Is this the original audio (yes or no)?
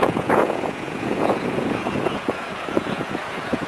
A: no